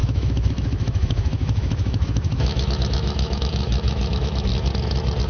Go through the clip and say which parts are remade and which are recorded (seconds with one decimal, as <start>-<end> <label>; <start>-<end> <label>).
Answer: 0.0-4.5 remade; 4.5-5.3 recorded